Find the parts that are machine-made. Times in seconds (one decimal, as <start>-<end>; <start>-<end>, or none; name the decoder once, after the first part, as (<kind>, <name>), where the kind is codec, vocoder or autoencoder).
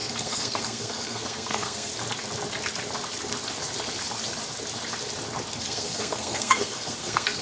0.0-1.9 (codec, SNAC); 5.6-7.4